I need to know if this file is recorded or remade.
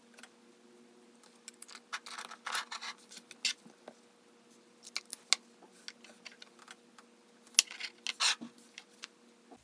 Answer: recorded